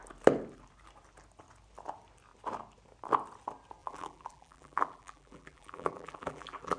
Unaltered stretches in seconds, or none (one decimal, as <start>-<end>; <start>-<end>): 0.0-3.8

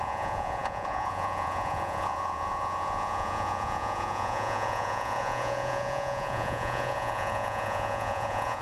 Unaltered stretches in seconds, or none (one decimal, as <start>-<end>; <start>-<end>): none

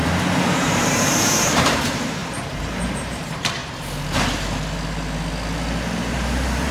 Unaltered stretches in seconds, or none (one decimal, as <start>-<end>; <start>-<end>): 3.6-6.1

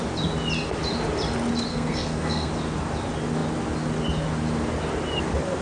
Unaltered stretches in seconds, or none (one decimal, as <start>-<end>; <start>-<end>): 0.0-1.7; 2.5-5.6